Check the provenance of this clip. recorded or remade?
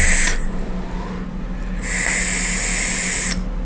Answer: recorded